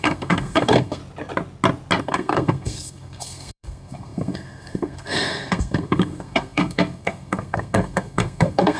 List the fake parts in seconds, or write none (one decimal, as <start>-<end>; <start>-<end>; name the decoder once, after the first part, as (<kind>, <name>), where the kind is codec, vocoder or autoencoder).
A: 0.0-1.0 (codec, SNAC); 2.0-8.8